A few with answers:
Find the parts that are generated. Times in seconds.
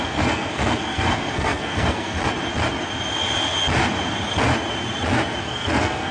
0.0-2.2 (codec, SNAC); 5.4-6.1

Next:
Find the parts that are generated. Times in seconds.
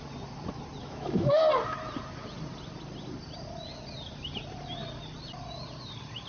0.8-1.4 (autoencoder, DAC-VAE)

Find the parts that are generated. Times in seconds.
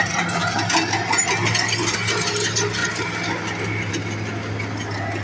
none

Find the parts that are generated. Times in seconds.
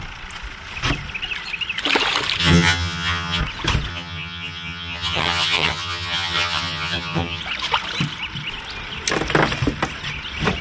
2.4-3.4 (vocoder, HiFi-GAN); 3.9-7.4